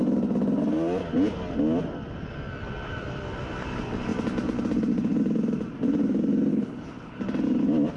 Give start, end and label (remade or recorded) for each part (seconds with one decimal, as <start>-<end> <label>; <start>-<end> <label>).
0.0-6.5 recorded; 6.5-7.2 remade; 7.2-8.0 recorded